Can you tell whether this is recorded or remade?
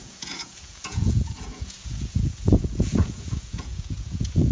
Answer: remade